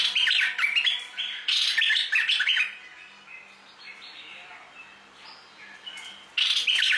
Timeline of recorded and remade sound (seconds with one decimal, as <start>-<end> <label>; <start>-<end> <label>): 0.0-7.0 recorded